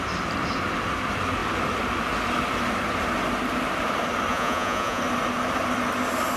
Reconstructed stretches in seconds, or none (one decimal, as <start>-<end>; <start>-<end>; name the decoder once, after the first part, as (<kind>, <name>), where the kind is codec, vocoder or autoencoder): 4.3-5.0 (vocoder, Vocos)